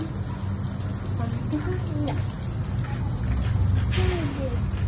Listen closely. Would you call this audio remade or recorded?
recorded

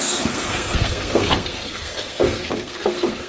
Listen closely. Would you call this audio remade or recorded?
remade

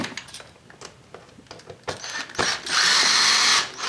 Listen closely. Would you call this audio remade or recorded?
recorded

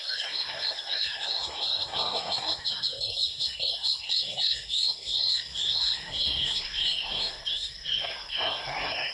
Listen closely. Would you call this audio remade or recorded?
remade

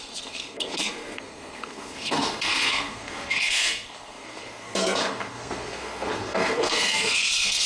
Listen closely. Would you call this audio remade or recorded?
remade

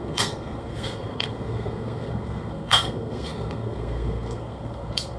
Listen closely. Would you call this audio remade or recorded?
remade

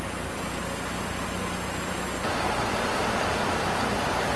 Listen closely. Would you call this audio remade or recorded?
recorded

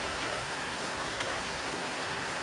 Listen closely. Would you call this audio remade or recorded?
remade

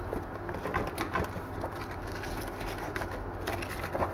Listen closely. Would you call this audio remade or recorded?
recorded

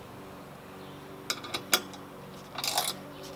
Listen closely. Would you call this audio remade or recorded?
recorded